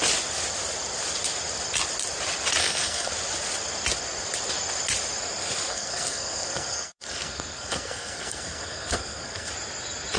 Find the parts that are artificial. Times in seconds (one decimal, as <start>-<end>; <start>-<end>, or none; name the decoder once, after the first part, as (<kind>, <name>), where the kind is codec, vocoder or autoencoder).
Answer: 2.6-3.1 (codec, SNAC); 5.7-9.5